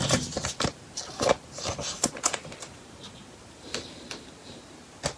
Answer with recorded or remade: recorded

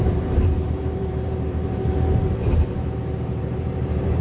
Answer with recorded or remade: remade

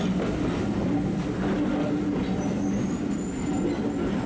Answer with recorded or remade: recorded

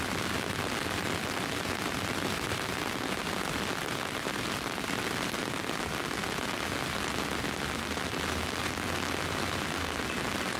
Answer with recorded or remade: recorded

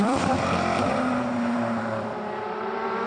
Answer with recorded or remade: remade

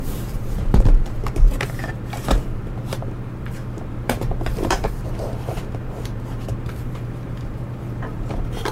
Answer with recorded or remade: remade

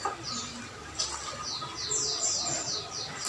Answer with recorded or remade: recorded